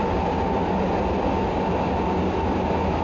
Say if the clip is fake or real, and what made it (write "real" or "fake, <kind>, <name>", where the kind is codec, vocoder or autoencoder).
real